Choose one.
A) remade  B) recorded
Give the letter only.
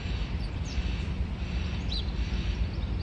A